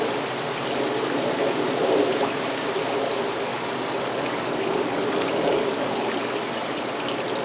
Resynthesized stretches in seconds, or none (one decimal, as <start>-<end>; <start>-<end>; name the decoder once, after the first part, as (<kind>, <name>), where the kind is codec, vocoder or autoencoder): 3.5-6.4 (codec, DAC)